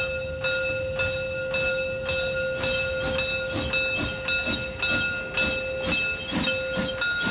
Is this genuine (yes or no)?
yes